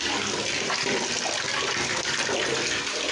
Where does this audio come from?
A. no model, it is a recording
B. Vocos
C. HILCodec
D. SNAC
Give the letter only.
A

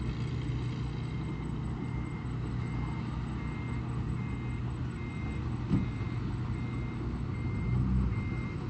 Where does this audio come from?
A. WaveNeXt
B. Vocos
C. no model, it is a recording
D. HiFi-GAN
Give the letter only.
C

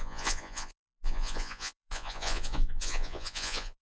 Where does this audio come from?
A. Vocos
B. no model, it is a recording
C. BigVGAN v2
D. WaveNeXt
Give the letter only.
A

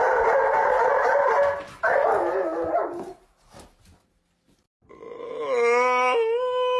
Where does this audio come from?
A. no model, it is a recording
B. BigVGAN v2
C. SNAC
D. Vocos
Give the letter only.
A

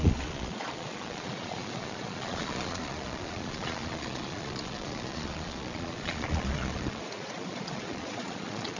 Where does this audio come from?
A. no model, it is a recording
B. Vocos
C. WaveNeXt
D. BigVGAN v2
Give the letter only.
B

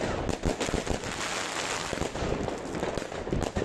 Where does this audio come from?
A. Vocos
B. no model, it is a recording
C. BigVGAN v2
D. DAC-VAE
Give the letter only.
B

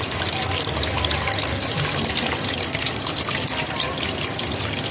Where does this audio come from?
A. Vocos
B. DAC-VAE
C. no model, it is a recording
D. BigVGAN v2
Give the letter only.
C